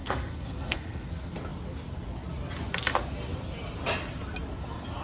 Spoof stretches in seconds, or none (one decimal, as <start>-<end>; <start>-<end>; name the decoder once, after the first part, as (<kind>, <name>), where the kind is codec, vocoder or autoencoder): 0.0-1.1 (codec, SNAC)